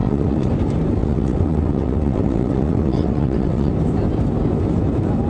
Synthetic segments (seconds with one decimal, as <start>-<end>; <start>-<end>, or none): 0.0-0.5; 1.0-3.7